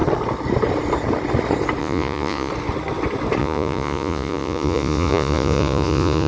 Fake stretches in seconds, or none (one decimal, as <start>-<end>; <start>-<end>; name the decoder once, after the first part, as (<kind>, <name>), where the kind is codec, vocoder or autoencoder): 1.8-2.5 (vocoder, Vocos); 3.4-6.3

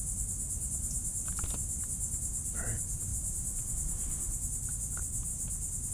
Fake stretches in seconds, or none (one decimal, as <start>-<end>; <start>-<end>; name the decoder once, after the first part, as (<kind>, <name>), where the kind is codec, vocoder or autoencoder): none

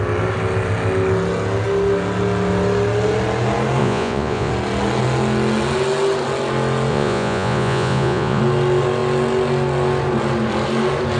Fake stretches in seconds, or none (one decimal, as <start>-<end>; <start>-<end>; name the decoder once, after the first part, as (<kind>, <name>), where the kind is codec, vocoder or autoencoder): 3.8-4.5 (vocoder, Vocos); 6.9-8.4

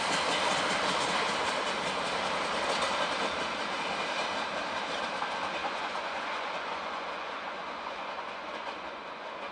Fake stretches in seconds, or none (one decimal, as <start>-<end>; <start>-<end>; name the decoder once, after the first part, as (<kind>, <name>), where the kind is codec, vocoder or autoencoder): 5.6-9.5 (vocoder, Vocos)

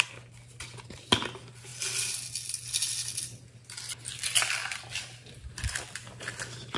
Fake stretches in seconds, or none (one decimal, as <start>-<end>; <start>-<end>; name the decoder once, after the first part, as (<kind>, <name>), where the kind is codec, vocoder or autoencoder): none

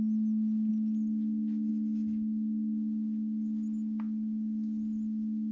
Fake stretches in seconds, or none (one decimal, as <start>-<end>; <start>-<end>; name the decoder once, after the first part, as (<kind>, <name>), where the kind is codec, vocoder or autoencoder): none